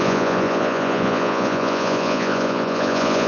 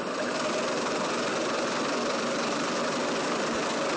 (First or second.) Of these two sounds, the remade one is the first